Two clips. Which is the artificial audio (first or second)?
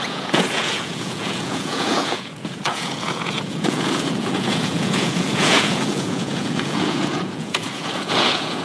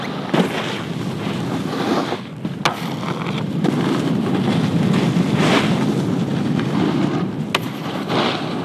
first